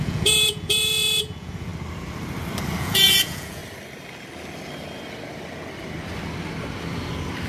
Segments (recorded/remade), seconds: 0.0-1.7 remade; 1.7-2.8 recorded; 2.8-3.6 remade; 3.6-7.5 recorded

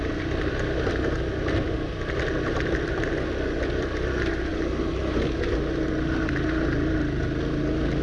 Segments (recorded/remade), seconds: 0.0-8.0 recorded

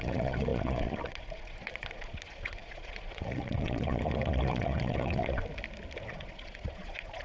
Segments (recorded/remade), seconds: 0.0-5.4 remade; 5.4-6.1 recorded; 6.1-7.2 remade

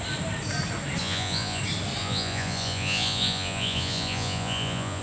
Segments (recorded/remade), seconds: 0.0-1.0 recorded; 1.0-1.6 remade; 1.6-2.0 recorded; 2.0-5.0 remade